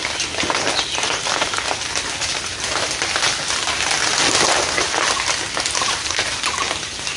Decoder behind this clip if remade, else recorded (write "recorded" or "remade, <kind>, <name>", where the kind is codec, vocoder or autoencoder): recorded